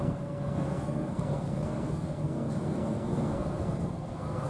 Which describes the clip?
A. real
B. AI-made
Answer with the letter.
B